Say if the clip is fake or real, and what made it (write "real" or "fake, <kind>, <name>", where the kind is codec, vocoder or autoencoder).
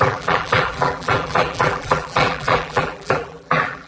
fake, vocoder, BigVGAN v2